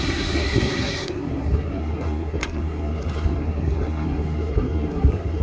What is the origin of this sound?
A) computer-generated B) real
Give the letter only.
A